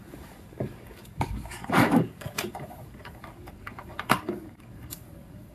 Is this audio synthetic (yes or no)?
yes